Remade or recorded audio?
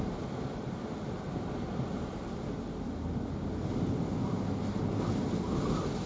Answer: recorded